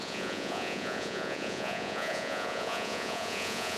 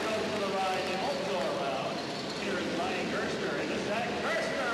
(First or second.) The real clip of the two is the second